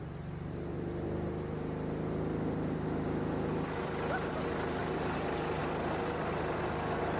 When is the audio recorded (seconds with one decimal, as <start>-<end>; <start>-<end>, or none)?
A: 0.0-7.2